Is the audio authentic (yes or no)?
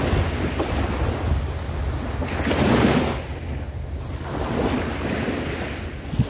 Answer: yes